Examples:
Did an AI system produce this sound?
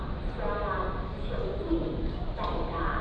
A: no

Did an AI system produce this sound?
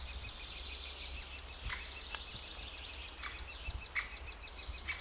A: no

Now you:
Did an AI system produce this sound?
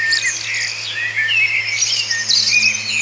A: no